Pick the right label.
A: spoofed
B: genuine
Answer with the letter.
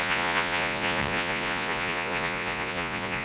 A